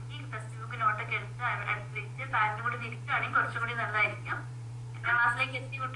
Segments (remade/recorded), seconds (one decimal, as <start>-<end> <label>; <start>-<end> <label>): 0.0-1.9 recorded; 1.9-5.1 remade; 5.1-6.0 recorded